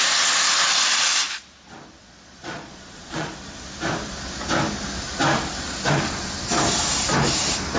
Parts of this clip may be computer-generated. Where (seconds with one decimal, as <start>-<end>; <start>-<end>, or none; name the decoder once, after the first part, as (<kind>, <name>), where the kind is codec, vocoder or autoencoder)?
2.0-3.3 (vocoder, Vocos)